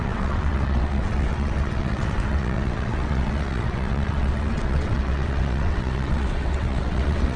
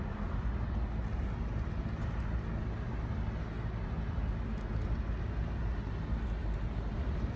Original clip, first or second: second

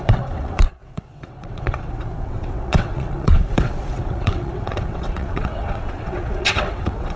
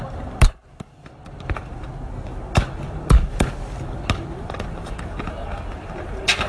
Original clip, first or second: second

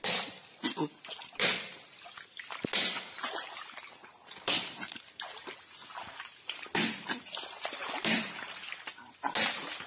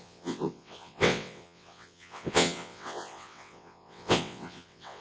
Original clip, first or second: first